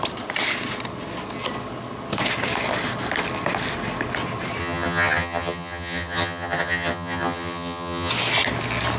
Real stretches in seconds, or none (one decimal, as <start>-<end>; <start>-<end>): 0.0-4.6; 8.1-9.0